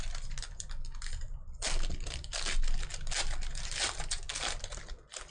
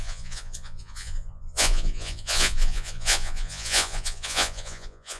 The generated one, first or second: second